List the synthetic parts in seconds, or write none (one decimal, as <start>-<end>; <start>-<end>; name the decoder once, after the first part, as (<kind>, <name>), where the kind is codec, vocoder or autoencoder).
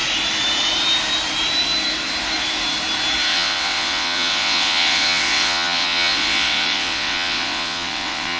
3.3-8.4 (vocoder, WaveNeXt)